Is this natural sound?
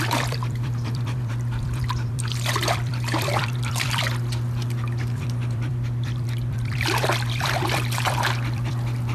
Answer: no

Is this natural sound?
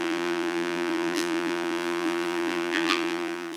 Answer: no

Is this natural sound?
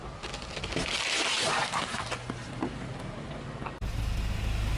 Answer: yes